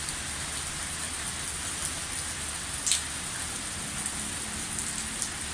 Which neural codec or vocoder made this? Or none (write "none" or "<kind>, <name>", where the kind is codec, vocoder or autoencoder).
none